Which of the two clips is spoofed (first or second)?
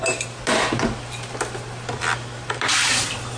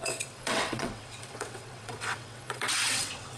second